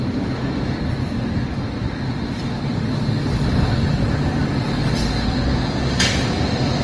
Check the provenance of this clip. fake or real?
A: real